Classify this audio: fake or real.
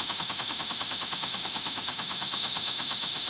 fake